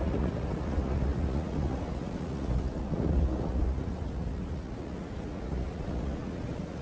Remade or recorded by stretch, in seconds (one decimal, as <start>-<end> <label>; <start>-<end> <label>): 0.0-6.8 remade